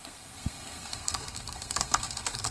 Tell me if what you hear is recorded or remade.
remade